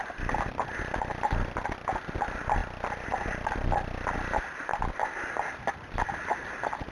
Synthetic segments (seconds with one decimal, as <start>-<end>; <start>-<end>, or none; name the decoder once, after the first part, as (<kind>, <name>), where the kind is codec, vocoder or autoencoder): 2.6-3.1 (vocoder, BigVGAN v2); 4.7-5.7